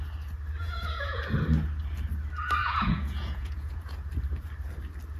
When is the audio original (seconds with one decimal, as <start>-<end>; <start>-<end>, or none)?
0.0-0.6; 1.2-2.6; 4.1-5.2